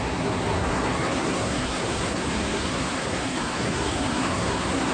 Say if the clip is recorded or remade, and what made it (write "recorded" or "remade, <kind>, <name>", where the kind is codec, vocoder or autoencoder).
remade, codec, SNAC